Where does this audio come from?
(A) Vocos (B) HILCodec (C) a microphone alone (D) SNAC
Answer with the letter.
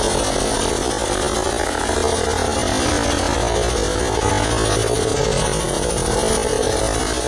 C